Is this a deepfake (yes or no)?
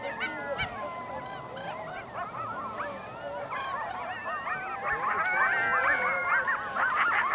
no